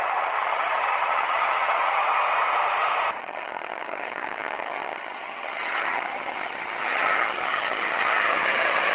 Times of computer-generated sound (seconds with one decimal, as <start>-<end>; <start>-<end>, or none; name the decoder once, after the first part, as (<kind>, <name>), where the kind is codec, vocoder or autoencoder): 0.0-2.0 (vocoder, HiFi-GAN); 3.2-8.9